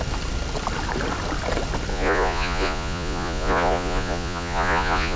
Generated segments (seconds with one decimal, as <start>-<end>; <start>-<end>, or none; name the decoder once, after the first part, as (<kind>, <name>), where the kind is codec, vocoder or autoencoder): 1.9-5.2 (vocoder, Vocos)